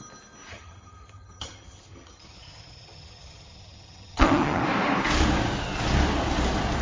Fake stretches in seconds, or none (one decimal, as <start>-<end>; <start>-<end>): 0.5-4.6